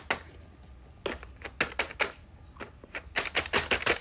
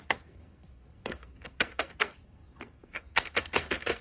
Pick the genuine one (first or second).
first